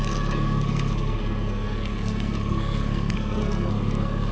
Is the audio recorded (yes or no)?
no